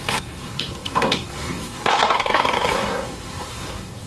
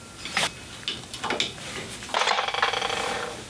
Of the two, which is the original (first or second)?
second